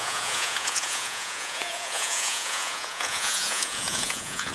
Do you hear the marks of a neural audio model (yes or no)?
yes